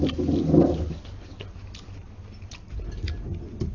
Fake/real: real